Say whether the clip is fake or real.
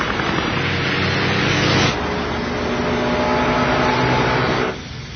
real